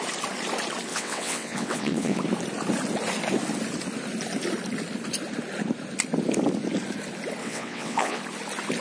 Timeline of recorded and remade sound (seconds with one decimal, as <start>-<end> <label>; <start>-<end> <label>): 0.0-0.9 recorded; 0.9-2.2 remade; 2.2-7.4 recorded; 7.4-8.2 remade; 8.2-8.8 recorded